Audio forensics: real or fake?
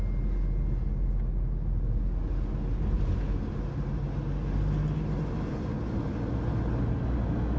real